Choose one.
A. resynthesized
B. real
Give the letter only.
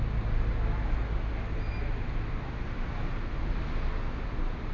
B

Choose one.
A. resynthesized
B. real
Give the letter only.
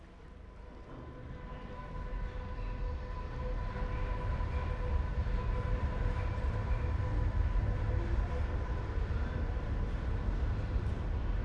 B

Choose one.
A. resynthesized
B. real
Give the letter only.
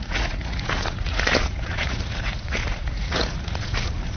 A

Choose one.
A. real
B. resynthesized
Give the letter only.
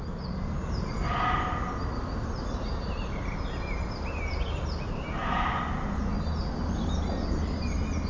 A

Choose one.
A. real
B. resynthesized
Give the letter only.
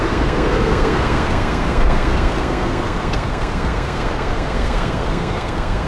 B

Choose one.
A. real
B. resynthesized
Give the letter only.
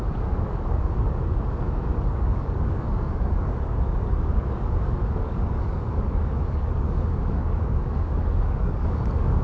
B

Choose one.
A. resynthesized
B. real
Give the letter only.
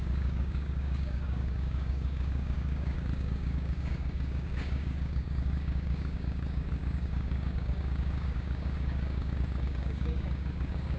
A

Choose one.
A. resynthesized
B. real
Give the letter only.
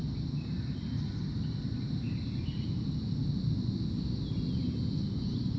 B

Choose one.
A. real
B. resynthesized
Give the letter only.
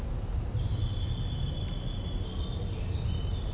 A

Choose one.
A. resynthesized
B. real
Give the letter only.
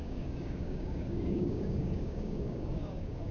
A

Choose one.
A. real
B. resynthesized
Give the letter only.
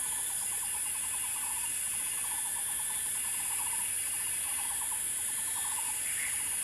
A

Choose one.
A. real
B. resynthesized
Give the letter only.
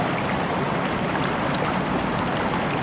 A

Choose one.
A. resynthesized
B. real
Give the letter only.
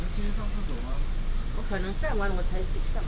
B